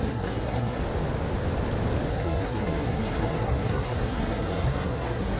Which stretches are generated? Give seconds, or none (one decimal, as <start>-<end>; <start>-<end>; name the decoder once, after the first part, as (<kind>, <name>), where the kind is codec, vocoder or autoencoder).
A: 0.0-0.8 (codec, SNAC); 2.1-5.4